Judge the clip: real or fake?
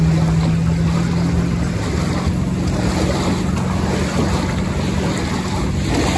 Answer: real